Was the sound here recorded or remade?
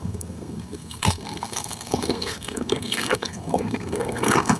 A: remade